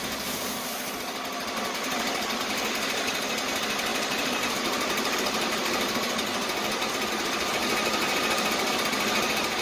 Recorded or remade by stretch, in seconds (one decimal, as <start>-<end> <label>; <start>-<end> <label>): 0.0-3.9 recorded; 3.9-6.1 remade; 6.1-7.6 recorded; 7.6-8.5 remade; 8.5-9.6 recorded